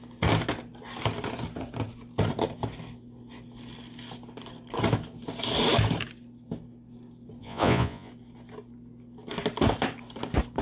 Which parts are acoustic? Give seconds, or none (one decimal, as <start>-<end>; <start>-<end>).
0.0-7.4; 8.1-10.6